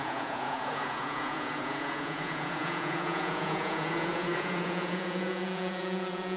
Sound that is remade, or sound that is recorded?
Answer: remade